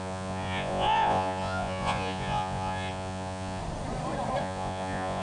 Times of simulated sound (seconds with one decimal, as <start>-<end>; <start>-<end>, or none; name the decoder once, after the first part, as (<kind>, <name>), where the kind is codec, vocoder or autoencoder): 0.0-3.6 (vocoder, Vocos); 4.4-5.2